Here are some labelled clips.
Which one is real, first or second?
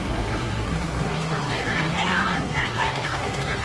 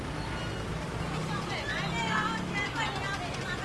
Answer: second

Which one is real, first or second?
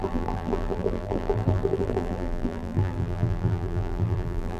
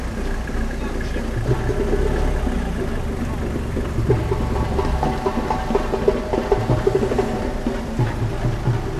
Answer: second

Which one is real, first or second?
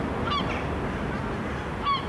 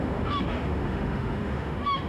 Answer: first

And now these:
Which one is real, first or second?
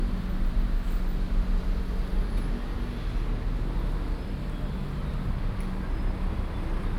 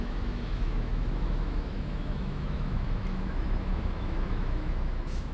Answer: first